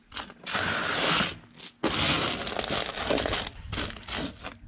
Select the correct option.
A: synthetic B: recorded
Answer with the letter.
B